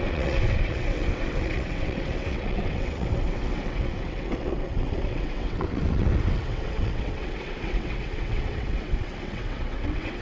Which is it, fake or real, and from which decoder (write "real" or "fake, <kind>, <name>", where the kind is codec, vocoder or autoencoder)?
fake, vocoder, WaveNeXt